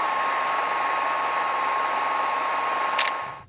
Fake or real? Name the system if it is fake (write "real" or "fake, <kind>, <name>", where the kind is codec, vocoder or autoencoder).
fake, vocoder, BigVGAN v2